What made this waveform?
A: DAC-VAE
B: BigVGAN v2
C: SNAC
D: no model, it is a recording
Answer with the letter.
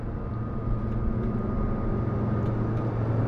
D